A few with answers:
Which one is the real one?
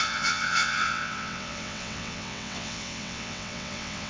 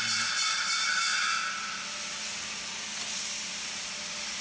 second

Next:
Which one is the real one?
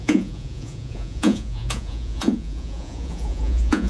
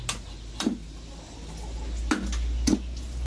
second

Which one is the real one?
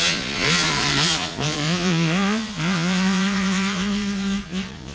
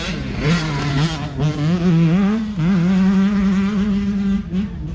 second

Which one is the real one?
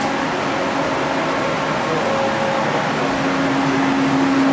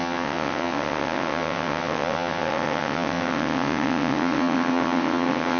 first